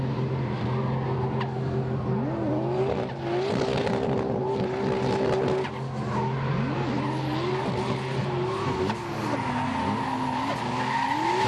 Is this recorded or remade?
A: recorded